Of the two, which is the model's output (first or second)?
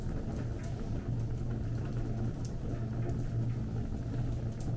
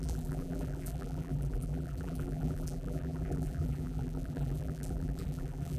second